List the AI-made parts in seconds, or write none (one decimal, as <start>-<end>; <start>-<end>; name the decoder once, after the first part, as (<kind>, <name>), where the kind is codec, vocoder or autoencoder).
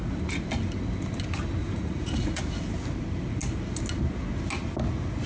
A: 1.6-2.4 (vocoder, Vocos)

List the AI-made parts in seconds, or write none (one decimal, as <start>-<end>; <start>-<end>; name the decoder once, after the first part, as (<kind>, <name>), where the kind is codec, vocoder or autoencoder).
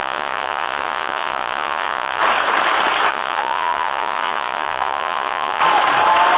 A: 0.0-2.2 (vocoder, Vocos); 3.1-5.6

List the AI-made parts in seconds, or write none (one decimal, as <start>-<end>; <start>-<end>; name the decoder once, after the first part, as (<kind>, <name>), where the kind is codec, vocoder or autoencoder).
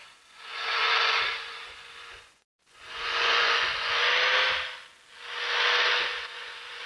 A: 0.0-4.1 (vocoder, Vocos); 6.1-6.9